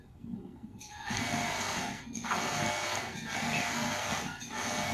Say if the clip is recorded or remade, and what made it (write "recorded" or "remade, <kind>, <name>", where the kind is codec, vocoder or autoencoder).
remade, codec, SNAC